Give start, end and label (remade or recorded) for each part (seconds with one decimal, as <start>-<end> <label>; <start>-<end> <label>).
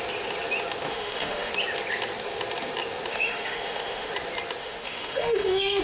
0.0-0.9 recorded; 0.9-1.5 remade; 1.5-3.1 recorded; 3.1-4.1 remade; 4.1-4.6 recorded; 4.6-5.8 remade